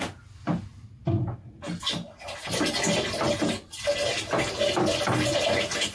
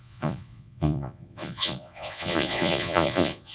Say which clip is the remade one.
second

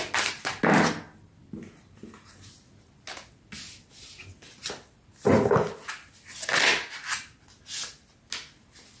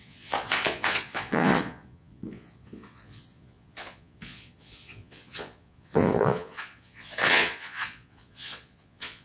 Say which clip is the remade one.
second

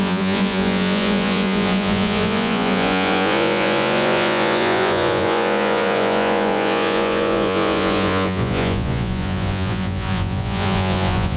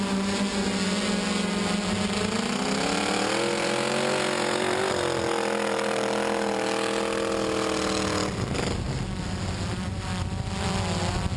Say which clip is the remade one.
first